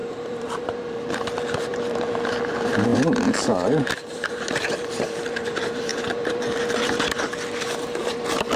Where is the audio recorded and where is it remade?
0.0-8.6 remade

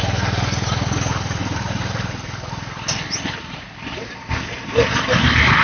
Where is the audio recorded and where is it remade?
0.0-1.4 recorded; 1.4-4.1 remade; 4.1-5.6 recorded

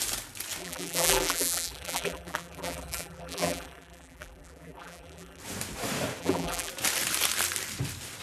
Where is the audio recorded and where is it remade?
0.0-0.6 recorded; 0.6-5.4 remade; 5.4-6.2 recorded; 6.2-6.7 remade; 6.7-8.2 recorded

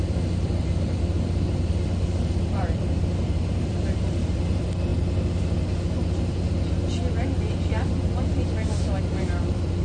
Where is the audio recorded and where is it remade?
0.0-4.9 remade; 4.9-9.0 recorded; 9.0-9.8 remade

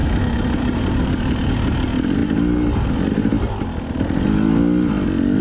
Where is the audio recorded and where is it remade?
0.0-5.4 recorded

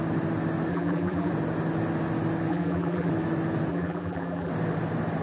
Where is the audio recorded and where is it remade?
0.0-0.7 recorded; 0.7-1.3 remade; 1.3-2.5 recorded; 2.5-3.1 remade; 3.1-3.7 recorded; 3.7-4.5 remade; 4.5-5.2 recorded

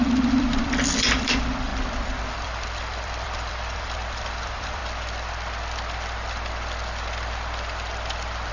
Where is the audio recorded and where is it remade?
0.0-1.7 remade; 1.7-2.3 recorded; 2.3-4.8 remade; 4.8-8.5 recorded

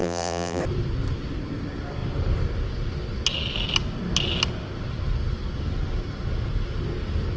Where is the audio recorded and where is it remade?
0.0-0.6 remade; 0.6-7.4 recorded